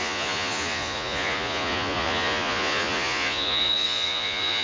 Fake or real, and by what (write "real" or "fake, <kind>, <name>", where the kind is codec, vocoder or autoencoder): fake, vocoder, Vocos